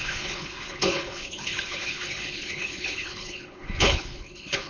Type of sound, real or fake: fake